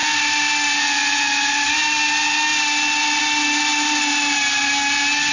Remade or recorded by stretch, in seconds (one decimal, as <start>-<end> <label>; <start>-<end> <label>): 0.0-5.3 recorded